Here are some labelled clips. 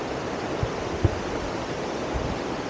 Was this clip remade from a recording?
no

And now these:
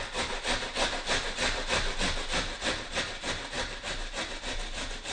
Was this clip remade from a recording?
no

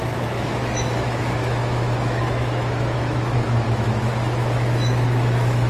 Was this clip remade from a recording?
yes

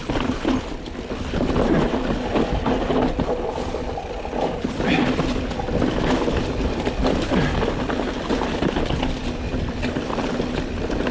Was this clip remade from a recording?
no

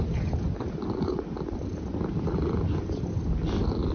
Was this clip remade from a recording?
no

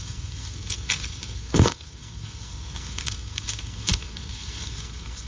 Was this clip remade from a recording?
yes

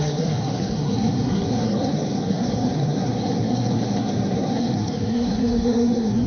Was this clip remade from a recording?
yes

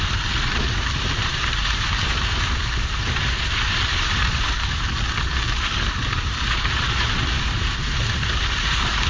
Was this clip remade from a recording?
yes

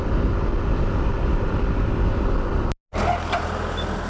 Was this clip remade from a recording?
no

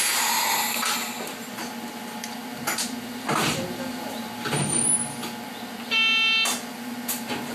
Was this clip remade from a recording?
no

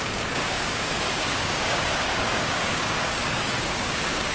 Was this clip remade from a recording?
yes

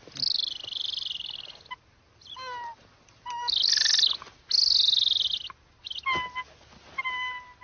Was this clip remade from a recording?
no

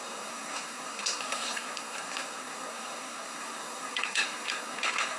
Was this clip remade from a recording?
yes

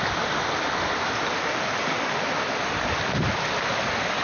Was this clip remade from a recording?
no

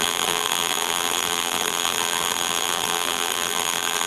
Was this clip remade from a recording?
yes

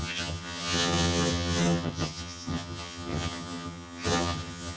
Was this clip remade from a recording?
yes